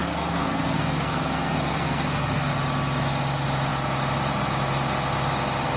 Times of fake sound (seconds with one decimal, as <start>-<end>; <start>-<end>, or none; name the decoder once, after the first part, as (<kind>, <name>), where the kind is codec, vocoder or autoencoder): 0.0-2.5 (codec, SNAC)